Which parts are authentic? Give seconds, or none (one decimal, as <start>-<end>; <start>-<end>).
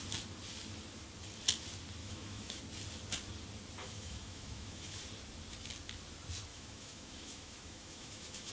0.0-2.0; 2.6-3.8; 5.0-6.5